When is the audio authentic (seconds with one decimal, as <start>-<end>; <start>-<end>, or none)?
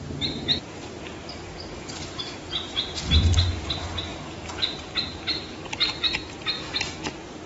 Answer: 0.0-2.0; 3.1-4.1; 5.9-7.5